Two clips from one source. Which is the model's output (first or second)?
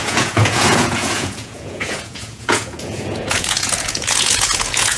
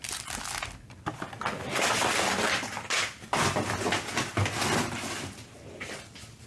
first